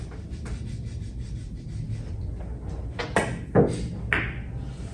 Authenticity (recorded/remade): recorded